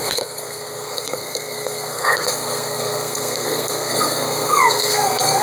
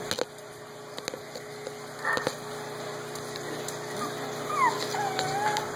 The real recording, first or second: second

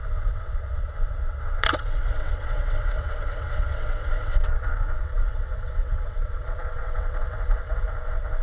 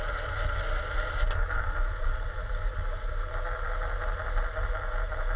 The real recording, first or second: second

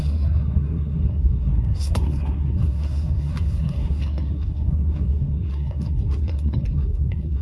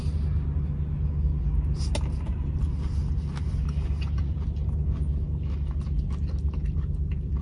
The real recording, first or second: second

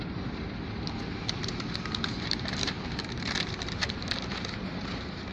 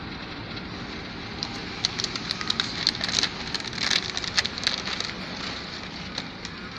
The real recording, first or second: second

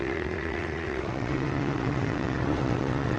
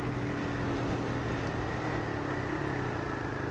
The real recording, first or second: second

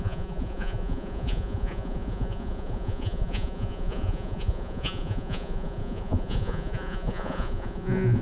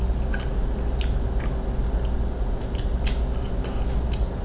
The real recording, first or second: second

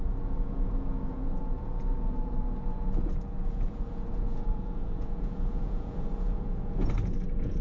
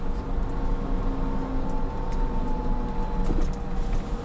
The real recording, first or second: second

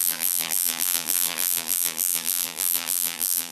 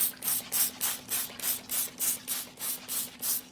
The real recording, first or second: second